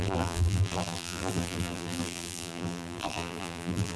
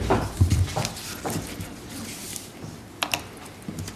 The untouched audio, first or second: second